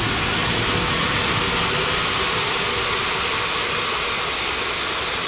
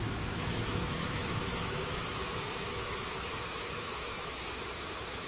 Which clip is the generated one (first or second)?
second